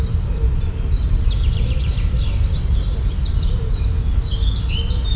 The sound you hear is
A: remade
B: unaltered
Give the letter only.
B